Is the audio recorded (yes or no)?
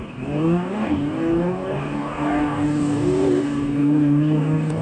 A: no